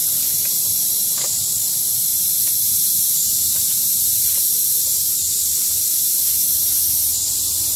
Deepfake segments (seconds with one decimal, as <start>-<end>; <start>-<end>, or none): 2.1-6.8